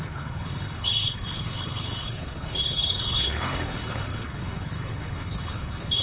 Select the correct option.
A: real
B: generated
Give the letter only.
B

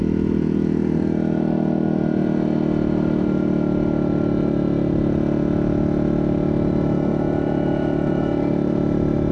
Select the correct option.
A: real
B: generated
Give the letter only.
A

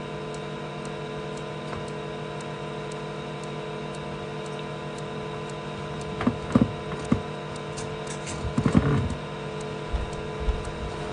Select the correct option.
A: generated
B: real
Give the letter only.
B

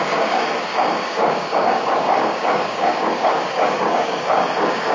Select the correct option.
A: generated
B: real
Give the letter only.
A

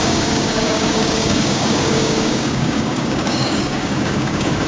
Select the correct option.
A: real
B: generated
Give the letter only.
B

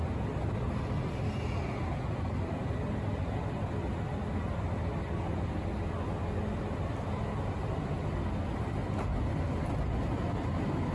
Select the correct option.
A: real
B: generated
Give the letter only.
A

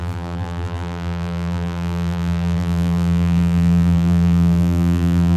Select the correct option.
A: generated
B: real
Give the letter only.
A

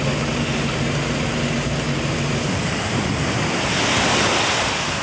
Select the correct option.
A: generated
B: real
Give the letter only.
B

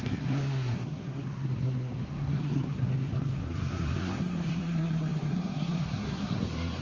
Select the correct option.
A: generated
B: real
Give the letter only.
A